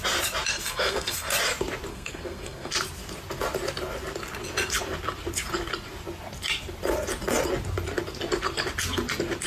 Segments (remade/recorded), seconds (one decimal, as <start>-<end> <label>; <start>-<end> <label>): 0.0-0.5 recorded; 0.5-1.3 remade; 1.3-1.9 recorded; 1.9-2.7 remade; 2.7-9.5 recorded